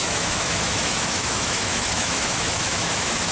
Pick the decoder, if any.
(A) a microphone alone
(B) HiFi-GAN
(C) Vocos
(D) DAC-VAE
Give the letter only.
D